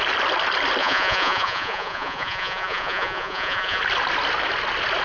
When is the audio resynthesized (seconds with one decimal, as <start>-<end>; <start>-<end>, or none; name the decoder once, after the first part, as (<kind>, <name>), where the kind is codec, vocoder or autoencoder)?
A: 0.8-3.8 (vocoder, Vocos)